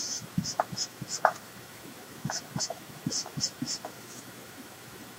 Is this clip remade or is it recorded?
remade